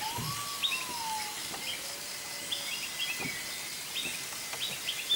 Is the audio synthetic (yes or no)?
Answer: no